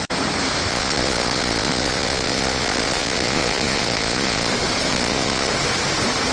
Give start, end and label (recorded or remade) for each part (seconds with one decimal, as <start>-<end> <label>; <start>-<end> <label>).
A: 0.0-0.7 recorded; 0.7-4.5 remade; 4.5-4.9 recorded; 4.9-5.5 remade; 5.5-6.3 recorded